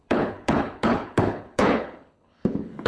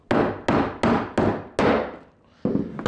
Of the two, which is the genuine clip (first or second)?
second